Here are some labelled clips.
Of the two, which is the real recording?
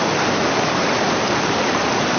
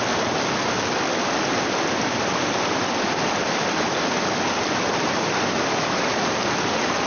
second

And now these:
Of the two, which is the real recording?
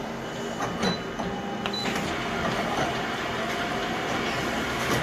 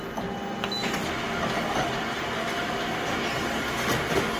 second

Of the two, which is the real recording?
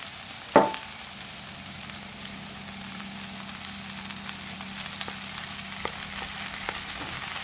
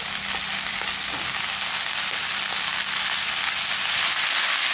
second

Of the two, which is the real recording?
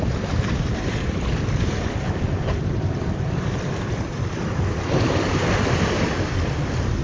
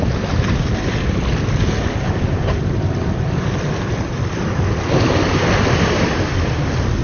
second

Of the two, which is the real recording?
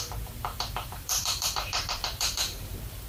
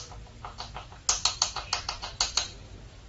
second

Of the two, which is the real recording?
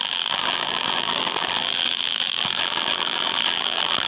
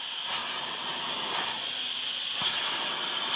second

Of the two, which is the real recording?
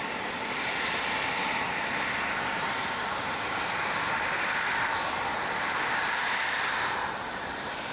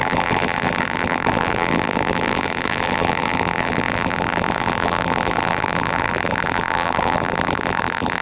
first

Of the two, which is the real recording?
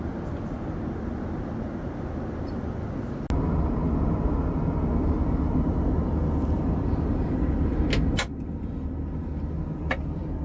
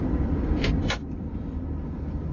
first